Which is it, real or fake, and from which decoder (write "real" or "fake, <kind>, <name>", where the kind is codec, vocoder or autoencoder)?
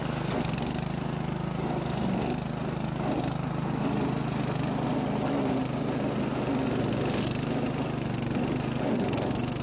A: real